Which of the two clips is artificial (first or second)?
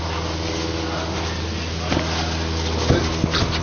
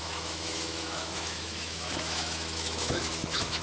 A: second